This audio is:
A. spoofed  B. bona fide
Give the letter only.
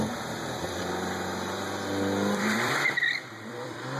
A